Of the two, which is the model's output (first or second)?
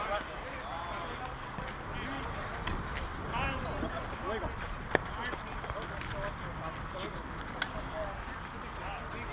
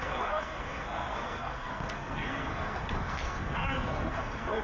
second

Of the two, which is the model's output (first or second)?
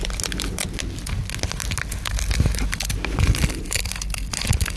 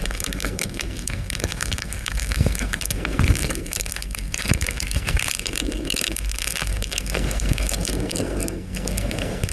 second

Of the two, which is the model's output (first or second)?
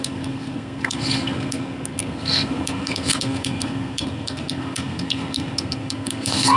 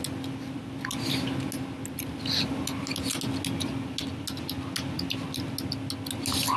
first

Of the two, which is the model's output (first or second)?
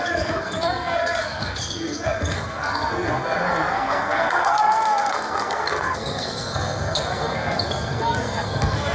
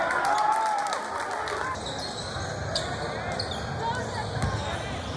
first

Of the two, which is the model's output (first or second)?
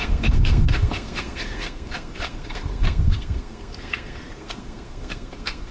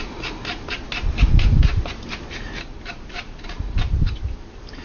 first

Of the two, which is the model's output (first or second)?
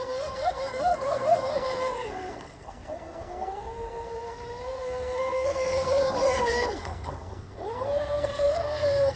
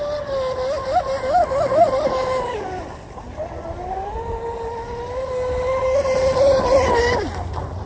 first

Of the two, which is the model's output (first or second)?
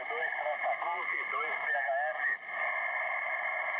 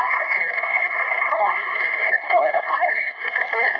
second